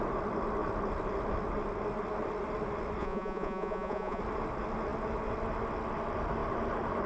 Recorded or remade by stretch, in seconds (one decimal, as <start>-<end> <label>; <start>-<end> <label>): 0.0-3.0 recorded; 3.0-4.2 remade; 4.2-7.1 recorded